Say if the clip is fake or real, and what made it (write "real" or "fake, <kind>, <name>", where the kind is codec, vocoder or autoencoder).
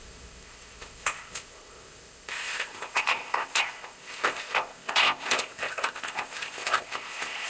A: fake, codec, ZipCodec